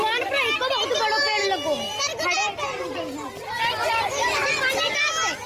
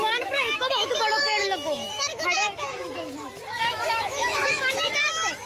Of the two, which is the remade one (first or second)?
second